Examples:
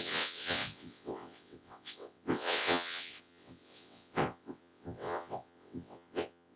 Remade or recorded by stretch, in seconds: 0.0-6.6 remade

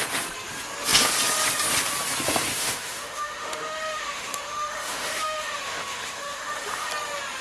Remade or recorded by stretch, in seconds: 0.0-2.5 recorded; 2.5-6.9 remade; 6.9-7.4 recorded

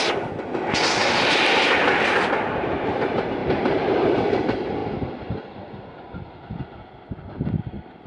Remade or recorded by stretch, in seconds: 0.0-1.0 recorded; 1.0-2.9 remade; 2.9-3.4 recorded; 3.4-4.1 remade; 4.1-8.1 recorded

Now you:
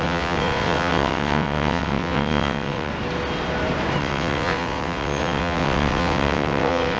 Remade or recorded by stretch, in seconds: 0.0-2.9 remade; 2.9-4.0 recorded; 4.0-7.0 remade

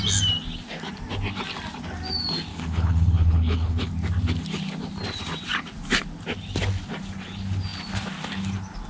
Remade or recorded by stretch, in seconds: 0.0-2.5 recorded; 2.5-3.9 remade; 3.9-8.9 recorded

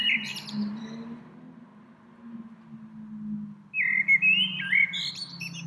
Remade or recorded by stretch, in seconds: 0.0-1.2 remade; 1.2-5.7 recorded

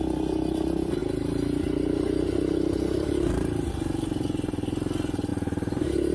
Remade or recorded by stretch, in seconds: 0.0-1.0 recorded; 1.0-3.7 remade; 3.7-5.3 recorded; 5.3-6.1 remade